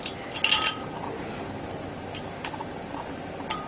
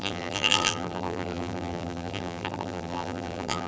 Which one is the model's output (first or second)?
second